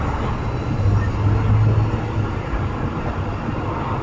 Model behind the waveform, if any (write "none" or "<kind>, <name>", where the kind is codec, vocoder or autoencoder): none